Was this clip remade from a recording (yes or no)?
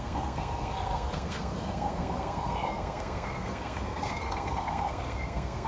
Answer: yes